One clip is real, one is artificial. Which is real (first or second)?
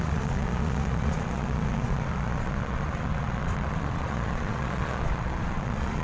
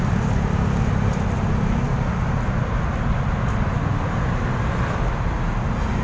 second